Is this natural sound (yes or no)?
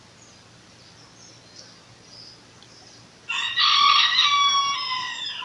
yes